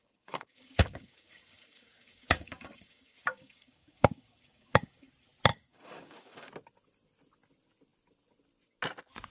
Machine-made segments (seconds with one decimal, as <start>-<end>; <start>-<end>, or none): 0.0-5.1; 5.5-6.5